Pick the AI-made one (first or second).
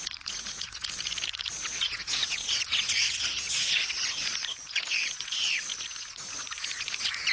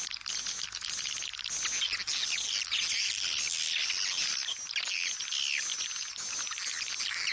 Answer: first